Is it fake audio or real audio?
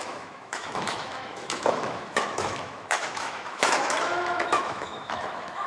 fake